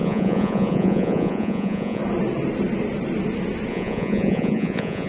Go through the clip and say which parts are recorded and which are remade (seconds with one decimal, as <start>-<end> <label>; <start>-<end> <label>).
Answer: 0.0-2.0 remade; 2.0-3.7 recorded; 3.7-5.1 remade